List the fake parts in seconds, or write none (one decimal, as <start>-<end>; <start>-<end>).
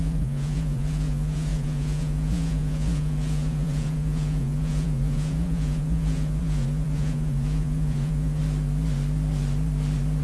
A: 0.0-8.4